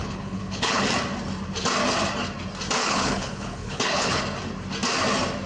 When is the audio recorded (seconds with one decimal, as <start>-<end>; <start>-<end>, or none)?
0.8-2.8; 4.2-5.5